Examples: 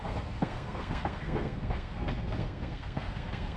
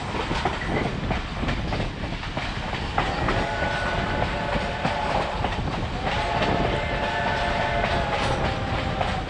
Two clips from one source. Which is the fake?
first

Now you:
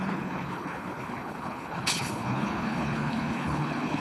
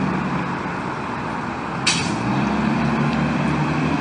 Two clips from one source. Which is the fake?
first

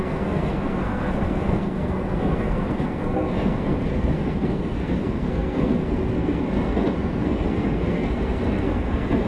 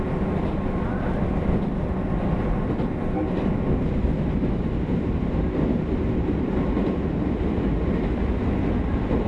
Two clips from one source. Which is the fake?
first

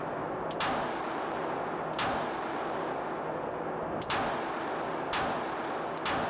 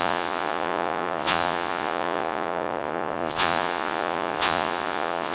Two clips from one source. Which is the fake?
second